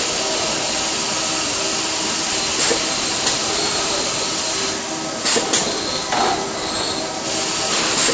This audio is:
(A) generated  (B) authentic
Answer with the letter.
B